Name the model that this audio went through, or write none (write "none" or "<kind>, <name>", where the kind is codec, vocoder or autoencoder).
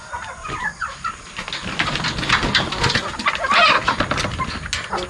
none